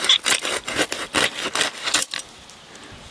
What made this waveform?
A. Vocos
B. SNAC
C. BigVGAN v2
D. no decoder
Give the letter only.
D